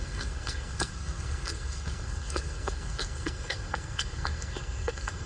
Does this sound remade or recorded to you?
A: remade